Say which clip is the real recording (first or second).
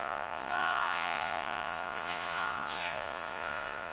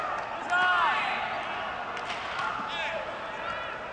second